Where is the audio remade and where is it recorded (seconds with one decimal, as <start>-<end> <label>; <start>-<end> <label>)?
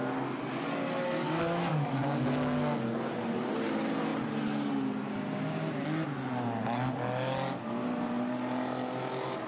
0.0-9.5 recorded